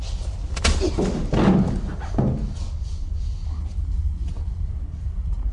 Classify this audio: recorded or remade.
recorded